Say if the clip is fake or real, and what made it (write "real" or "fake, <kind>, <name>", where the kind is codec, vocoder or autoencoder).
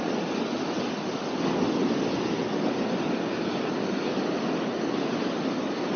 real